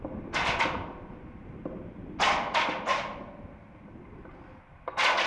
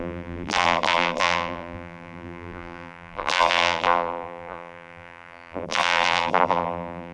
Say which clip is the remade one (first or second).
second